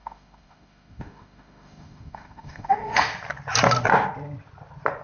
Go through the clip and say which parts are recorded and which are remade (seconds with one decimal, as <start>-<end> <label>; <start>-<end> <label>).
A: 0.0-3.0 remade; 3.0-5.0 recorded